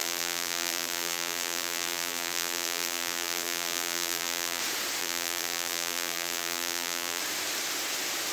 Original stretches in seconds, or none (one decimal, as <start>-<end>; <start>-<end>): 4.6-5.0; 7.2-8.3

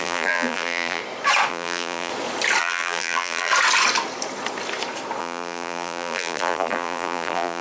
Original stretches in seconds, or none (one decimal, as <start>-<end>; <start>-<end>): 1.0-1.5; 2.1-2.6; 3.5-5.2